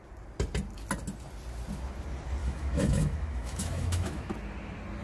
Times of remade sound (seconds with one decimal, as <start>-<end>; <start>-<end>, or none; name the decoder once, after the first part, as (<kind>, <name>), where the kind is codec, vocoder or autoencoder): 2.4-4.3 (autoencoder, DAC-VAE)